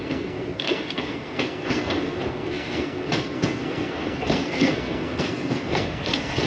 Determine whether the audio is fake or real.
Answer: fake